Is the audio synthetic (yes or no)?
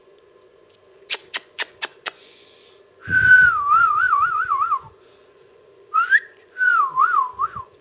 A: yes